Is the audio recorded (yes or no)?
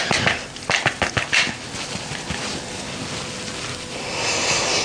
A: yes